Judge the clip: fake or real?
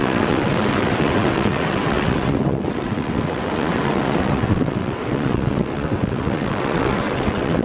fake